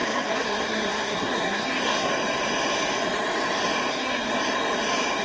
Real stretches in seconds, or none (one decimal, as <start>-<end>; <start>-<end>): 2.1-3.9; 4.3-5.2